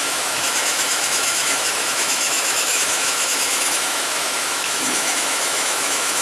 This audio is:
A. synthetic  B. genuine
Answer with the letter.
A